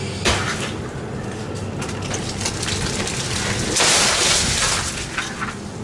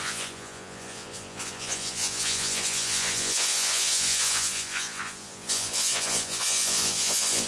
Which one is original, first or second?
first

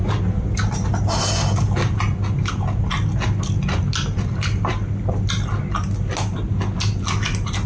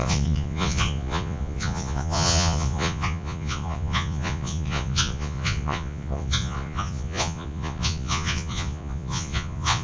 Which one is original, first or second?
first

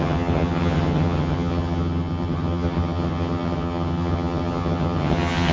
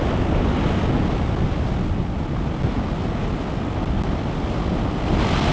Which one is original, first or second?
second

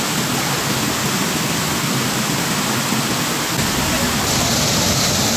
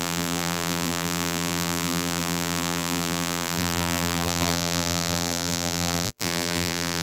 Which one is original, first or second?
first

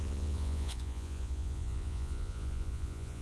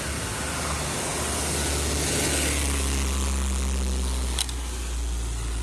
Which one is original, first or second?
second